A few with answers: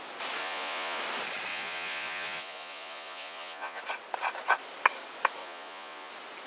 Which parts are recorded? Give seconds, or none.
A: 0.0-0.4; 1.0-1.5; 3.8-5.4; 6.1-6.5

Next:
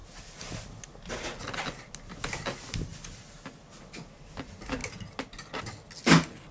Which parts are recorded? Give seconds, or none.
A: 0.0-6.5

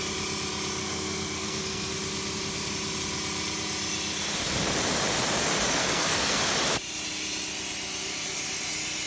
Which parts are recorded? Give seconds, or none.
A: 0.0-0.8; 1.9-5.8; 6.4-9.1

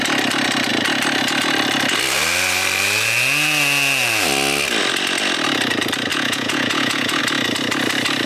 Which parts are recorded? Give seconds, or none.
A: 0.0-6.1; 7.2-8.3

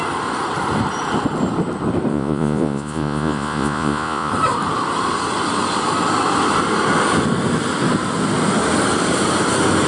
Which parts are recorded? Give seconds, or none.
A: 0.0-2.1; 4.3-9.9

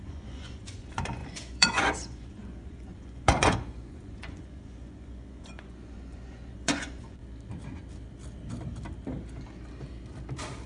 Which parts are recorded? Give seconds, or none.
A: 7.2-10.7

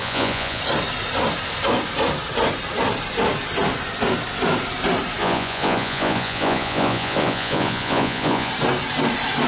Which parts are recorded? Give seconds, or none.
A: 0.6-5.2; 8.5-9.5